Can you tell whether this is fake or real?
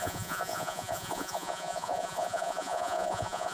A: fake